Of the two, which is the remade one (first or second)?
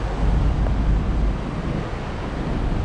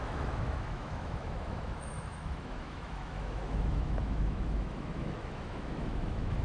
second